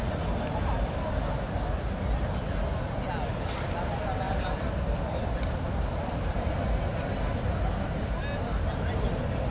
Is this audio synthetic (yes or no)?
no